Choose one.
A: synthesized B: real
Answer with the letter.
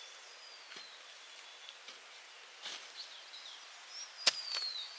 B